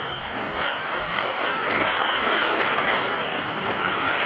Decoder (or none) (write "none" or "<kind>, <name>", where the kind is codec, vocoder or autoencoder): codec, DAC